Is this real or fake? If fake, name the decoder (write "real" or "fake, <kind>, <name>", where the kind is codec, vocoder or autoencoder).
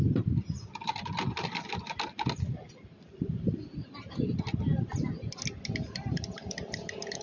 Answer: real